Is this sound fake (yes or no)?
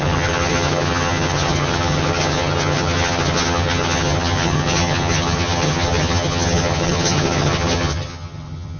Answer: yes